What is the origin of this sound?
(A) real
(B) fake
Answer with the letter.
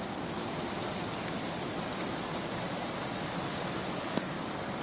A